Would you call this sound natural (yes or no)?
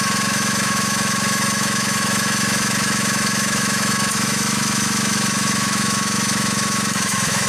no